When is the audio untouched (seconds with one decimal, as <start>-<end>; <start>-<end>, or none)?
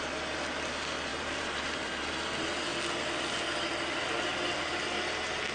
0.0-1.1; 2.1-5.5